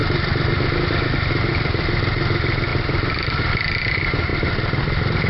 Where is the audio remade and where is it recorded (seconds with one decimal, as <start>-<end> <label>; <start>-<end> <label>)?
0.0-4.3 recorded; 4.3-5.3 remade